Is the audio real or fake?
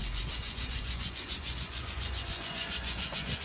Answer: fake